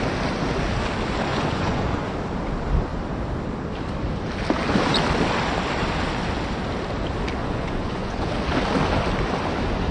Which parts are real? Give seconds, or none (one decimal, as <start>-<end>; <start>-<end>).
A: 0.0-1.3; 2.1-7.4; 8.3-9.9